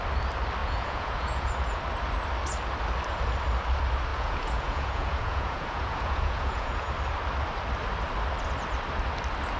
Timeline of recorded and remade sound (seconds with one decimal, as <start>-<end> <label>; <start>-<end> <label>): 0.0-0.6 recorded; 0.6-1.8 remade; 1.8-4.1 recorded; 4.1-6.9 remade; 6.9-9.6 recorded

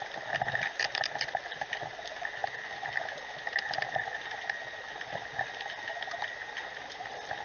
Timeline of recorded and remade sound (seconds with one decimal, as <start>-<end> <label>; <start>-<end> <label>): 0.0-7.4 recorded

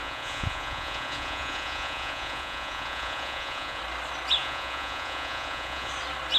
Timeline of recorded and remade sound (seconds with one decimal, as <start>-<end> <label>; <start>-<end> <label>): 0.0-3.8 remade; 3.8-4.4 recorded; 4.4-5.9 remade; 5.9-6.4 recorded

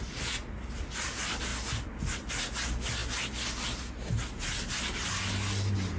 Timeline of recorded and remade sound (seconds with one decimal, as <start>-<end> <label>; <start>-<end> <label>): 0.0-6.0 recorded

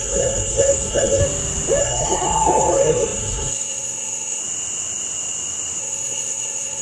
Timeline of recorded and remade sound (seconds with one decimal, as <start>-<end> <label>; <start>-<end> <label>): 0.0-1.2 remade; 1.2-1.8 recorded; 1.8-4.4 remade; 4.4-5.8 recorded; 5.8-6.8 remade

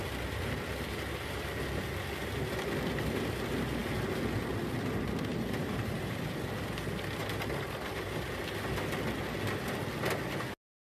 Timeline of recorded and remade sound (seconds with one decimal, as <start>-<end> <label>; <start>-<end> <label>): 0.0-5.3 recorded; 5.3-6.2 remade; 6.2-10.9 recorded

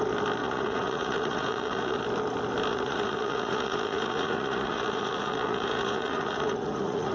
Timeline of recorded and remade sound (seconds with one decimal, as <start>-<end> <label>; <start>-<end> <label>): 0.0-0.4 recorded; 0.4-2.0 remade; 2.0-2.7 recorded; 2.7-7.1 remade

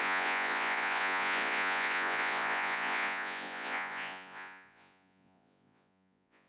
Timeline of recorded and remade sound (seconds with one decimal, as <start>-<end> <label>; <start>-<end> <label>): 0.0-6.5 remade